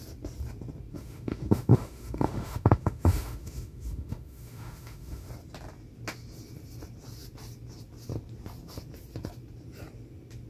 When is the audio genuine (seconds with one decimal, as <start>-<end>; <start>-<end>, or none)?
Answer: 0.0-0.9; 5.3-10.5